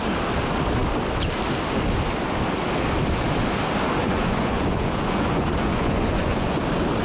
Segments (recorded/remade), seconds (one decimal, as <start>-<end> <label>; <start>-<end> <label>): 0.0-4.0 recorded; 4.0-6.6 remade; 6.6-7.0 recorded